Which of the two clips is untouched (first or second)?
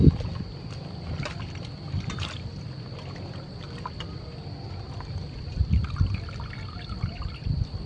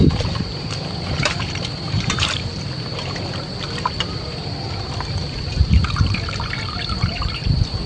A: first